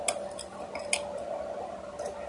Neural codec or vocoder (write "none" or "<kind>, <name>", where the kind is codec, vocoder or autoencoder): none